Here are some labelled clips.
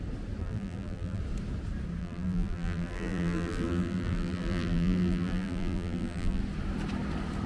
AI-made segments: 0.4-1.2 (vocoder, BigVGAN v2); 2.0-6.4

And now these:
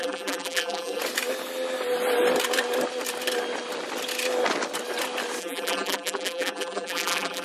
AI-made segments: 0.0-1.0 (vocoder, BigVGAN v2); 5.4-7.4

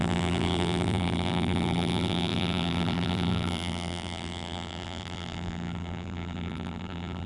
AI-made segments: 0.0-7.3 (vocoder, BigVGAN v2)

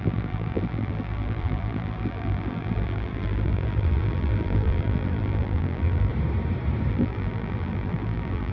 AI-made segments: 0.0-6.1 (vocoder, BigVGAN v2); 6.9-8.5

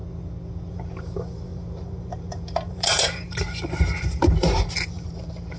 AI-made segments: 0.7-5.6 (vocoder, BigVGAN v2)

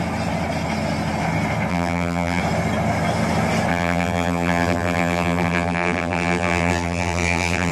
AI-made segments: 1.7-2.4 (vocoder, BigVGAN v2); 3.7-7.7

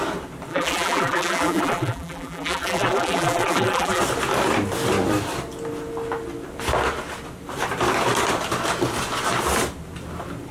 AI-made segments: 0.5-4.0 (vocoder, BigVGAN v2)